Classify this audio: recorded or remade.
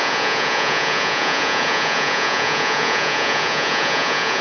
remade